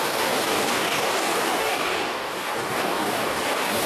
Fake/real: fake